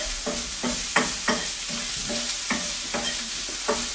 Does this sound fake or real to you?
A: real